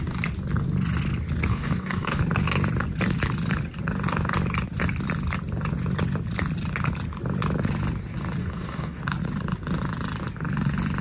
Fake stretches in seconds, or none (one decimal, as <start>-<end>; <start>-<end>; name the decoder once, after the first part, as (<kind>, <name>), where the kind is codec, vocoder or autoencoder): 1.5-2.2 (codec, DAC); 8.4-9.0